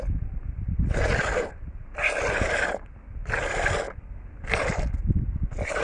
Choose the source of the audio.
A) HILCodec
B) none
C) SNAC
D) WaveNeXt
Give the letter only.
B